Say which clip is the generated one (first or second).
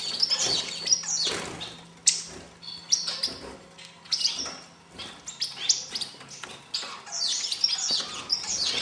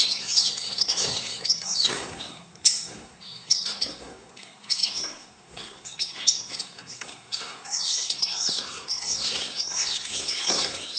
second